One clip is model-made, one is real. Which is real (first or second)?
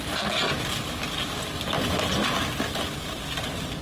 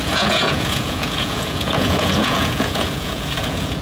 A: first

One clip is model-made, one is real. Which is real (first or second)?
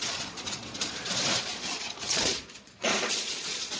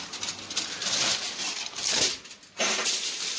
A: second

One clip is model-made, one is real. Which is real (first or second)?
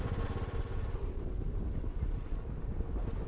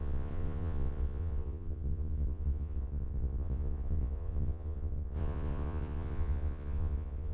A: first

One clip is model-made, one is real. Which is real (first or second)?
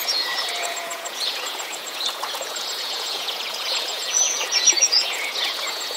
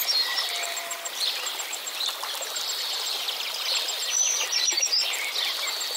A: second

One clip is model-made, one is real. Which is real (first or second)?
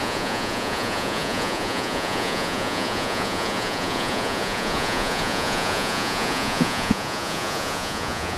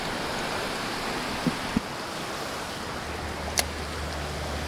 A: second